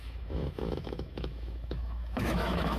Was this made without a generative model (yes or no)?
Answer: no